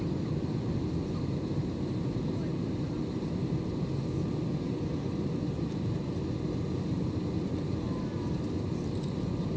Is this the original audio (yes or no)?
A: yes